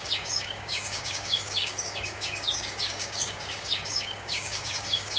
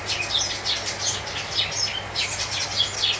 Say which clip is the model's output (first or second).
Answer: first